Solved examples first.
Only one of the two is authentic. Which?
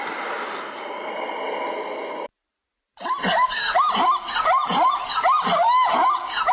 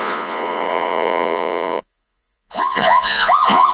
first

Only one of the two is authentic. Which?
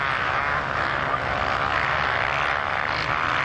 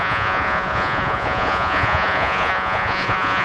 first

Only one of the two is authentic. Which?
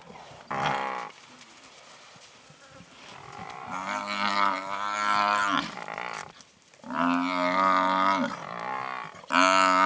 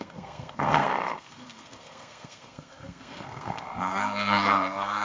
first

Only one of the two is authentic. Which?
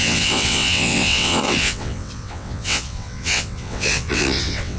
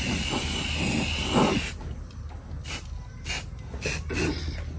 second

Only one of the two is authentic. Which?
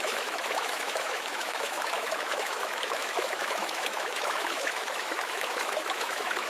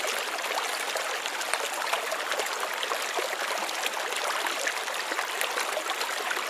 second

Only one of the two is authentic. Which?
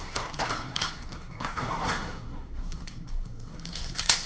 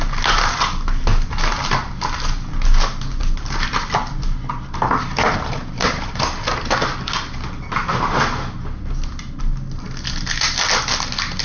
second